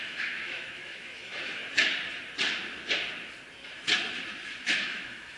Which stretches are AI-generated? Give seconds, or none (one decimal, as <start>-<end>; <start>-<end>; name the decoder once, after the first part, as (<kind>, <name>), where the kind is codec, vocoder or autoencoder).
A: 0.0-1.6 (autoencoder, DAC-VAE); 4.8-5.4